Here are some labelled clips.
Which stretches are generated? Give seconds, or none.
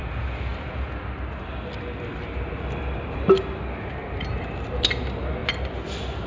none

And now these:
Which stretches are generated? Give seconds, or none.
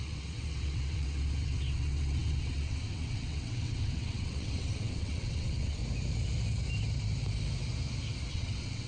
0.0-5.8 (vocoder, WaveNeXt); 8.3-8.9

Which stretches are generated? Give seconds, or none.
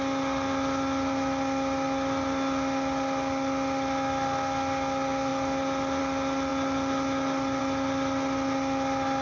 none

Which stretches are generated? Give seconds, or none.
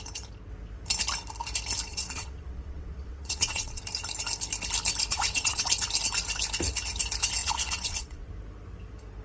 1.9-3.8 (vocoder, WaveNeXt); 5.1-5.7; 7.4-8.3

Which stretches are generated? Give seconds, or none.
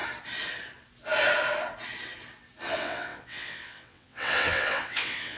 2.7-5.4 (vocoder, WaveNeXt)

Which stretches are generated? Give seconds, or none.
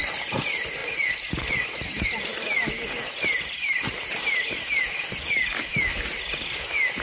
none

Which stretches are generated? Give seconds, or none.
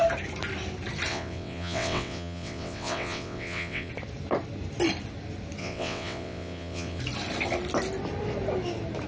1.1-3.9 (vocoder, WaveNeXt); 5.6-7.0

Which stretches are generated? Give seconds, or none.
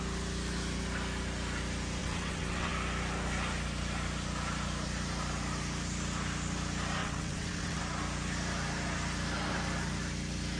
2.0-2.7 (vocoder, WaveNeXt); 7.0-7.8